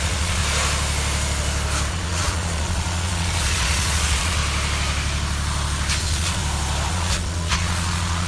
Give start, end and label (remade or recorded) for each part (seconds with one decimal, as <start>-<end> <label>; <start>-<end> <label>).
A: 0.0-0.4 remade; 0.4-1.9 recorded; 1.9-4.4 remade; 4.4-6.0 recorded; 6.0-6.4 remade; 6.4-6.9 recorded; 6.9-8.3 remade